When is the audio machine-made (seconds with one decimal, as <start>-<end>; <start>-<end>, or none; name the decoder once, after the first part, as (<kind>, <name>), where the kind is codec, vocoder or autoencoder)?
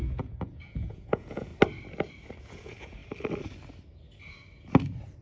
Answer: 0.0-1.5 (vocoder, Vocos); 2.4-3.0